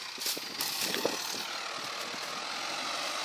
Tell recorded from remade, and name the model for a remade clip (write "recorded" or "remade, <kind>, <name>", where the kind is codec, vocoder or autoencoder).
recorded